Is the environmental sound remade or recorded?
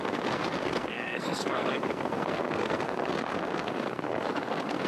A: remade